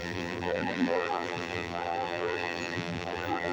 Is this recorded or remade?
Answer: remade